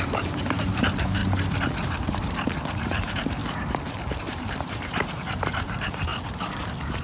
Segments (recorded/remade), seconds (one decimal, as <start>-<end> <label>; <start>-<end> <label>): 0.0-1.2 remade; 1.2-2.7 recorded; 2.7-3.4 remade; 3.4-4.2 recorded; 4.2-6.1 remade; 6.1-7.0 recorded